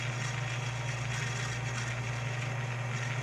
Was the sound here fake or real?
real